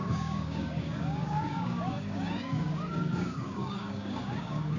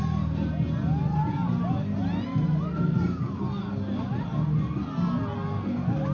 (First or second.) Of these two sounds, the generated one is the first